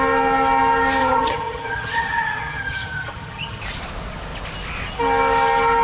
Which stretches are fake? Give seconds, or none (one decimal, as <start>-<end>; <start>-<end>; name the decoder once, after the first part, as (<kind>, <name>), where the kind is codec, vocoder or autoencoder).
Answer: 1.0-3.6 (vocoder, HiFi-GAN)